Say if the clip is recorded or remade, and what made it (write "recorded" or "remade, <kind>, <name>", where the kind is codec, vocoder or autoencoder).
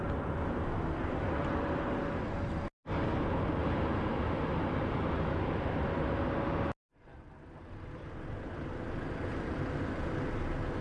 recorded